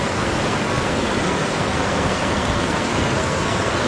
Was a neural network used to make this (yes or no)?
yes